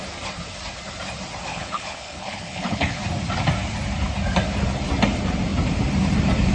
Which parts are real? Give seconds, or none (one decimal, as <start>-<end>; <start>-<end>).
0.0-1.5; 3.0-6.5